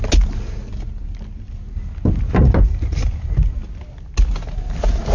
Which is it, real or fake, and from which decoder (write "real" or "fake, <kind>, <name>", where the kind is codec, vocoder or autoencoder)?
real